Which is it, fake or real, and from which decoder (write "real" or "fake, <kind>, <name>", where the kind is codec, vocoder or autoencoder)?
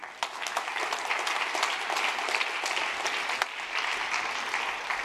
real